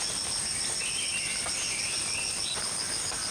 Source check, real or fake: real